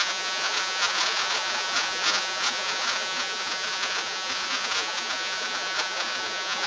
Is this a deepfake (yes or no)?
yes